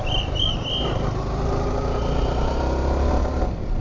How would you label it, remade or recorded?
recorded